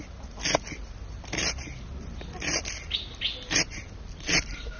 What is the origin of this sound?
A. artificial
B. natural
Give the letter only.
B